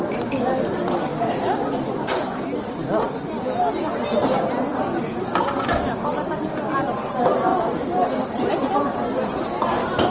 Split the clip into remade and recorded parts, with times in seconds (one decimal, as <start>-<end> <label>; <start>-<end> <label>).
0.0-4.0 recorded; 4.0-5.6 remade; 5.6-7.5 recorded; 7.5-8.5 remade; 8.5-10.1 recorded